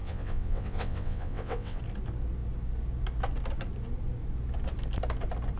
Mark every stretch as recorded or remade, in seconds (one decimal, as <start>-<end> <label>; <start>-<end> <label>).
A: 0.0-1.8 remade; 1.8-5.6 recorded